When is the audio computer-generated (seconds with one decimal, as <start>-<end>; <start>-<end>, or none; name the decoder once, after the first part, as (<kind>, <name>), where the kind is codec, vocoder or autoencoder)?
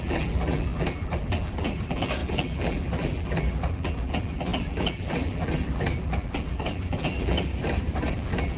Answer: 0.0-7.5 (vocoder, BigVGAN v2); 8.1-8.6